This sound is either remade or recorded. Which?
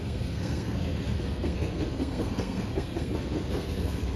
remade